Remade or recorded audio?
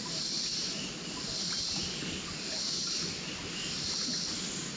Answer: remade